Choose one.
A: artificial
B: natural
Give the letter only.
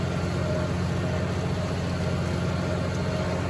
B